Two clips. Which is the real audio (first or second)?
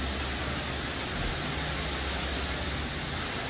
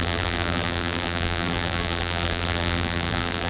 first